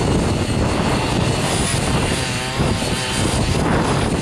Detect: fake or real real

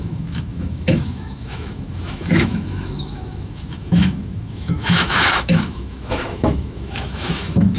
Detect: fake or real fake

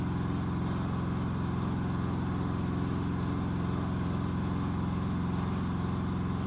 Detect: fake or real real